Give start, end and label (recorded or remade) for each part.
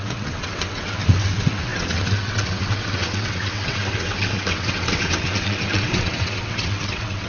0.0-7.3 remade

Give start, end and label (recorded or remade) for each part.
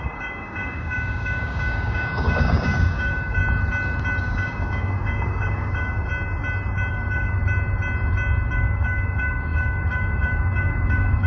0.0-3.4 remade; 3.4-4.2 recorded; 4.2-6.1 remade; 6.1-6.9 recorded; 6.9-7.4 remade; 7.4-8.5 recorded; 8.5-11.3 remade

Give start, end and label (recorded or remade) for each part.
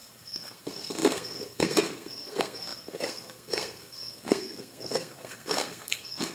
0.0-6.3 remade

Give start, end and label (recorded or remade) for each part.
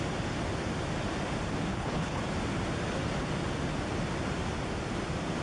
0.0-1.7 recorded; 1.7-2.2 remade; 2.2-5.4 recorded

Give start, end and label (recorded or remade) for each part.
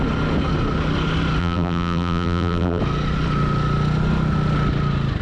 0.0-1.4 recorded; 1.4-2.8 remade; 2.8-5.2 recorded